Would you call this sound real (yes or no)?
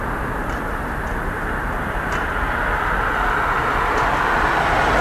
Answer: yes